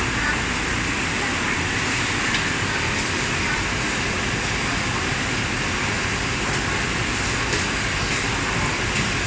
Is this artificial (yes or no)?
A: no